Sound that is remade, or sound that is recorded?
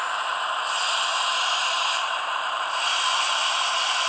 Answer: remade